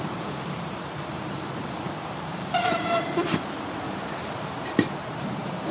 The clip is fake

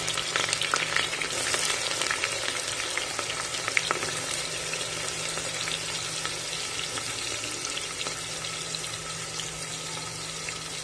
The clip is real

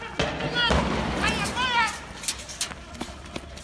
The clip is real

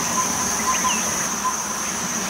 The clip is fake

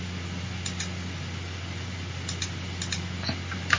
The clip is real